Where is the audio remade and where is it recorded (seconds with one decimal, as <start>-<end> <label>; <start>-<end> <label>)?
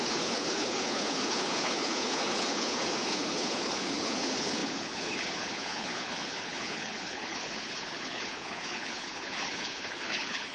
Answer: 0.0-10.5 remade